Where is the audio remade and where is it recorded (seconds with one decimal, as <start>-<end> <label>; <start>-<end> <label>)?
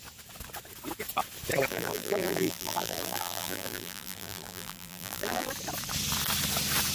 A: 0.0-1.7 recorded; 1.7-5.5 remade; 5.5-6.9 recorded